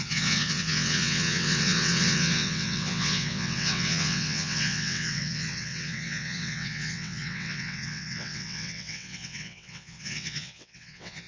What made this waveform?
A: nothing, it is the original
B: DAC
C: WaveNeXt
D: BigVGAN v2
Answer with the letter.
C